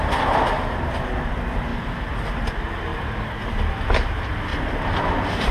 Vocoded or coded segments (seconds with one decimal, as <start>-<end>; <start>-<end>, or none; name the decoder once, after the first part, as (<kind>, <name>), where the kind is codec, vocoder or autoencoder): 1.7-2.5 (vocoder, BigVGAN v2); 4.5-5.0